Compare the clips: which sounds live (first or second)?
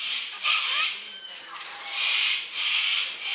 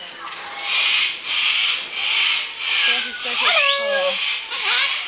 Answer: second